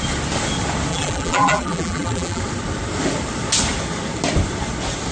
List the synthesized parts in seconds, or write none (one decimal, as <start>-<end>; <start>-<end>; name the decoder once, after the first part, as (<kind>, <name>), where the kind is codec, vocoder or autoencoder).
0.9-2.4 (vocoder, BigVGAN v2)